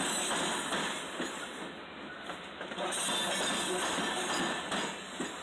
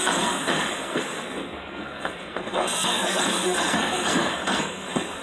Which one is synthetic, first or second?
second